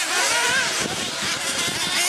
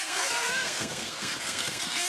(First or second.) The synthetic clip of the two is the second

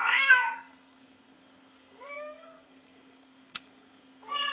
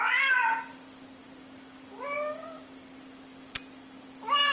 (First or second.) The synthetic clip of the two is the first